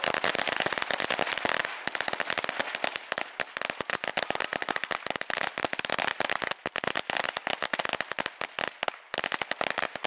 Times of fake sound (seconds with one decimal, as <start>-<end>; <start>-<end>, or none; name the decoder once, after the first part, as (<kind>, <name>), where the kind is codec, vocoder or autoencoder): none